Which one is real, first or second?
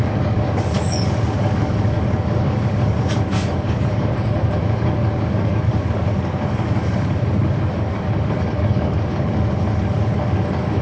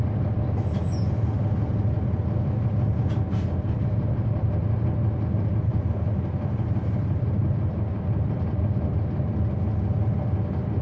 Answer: second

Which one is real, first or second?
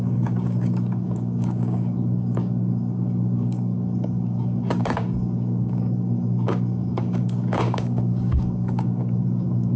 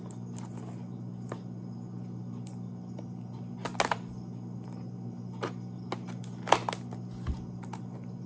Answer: second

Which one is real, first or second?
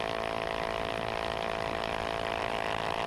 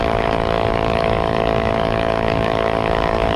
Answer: first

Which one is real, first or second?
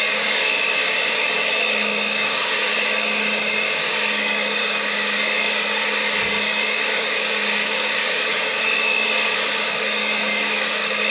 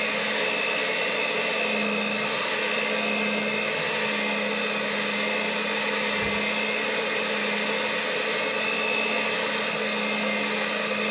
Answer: second